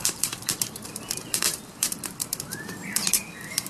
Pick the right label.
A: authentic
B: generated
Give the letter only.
B